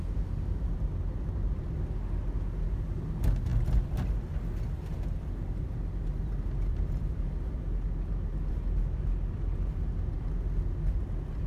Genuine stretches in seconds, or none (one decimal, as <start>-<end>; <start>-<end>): 0.0-11.5